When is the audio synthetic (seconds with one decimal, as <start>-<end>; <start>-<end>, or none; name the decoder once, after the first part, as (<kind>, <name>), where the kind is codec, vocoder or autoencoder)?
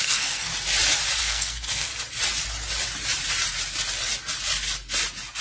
0.0-0.5 (codec, SNAC); 1.2-1.9